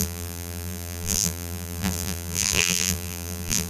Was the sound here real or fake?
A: fake